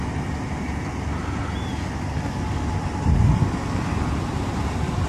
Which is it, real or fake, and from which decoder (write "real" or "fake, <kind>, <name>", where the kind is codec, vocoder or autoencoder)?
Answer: fake, vocoder, BigVGAN v2